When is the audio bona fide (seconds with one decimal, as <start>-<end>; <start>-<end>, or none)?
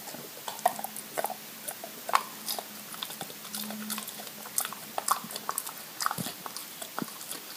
0.0-7.6